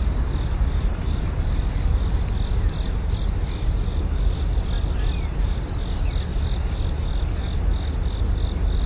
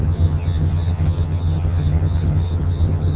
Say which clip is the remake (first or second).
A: second